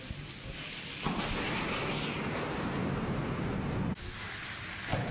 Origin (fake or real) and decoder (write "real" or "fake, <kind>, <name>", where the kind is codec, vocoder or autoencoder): real